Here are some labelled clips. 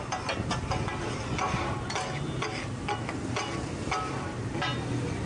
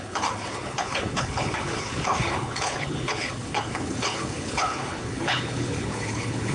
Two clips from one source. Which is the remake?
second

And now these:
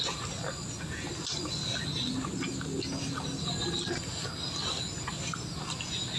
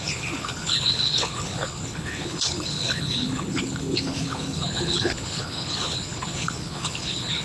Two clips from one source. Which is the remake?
second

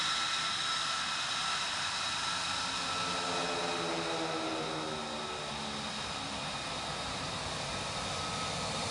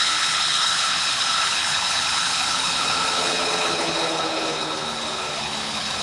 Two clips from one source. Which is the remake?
second